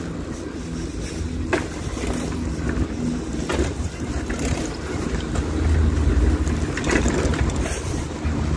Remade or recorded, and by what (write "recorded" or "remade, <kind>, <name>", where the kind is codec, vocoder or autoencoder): recorded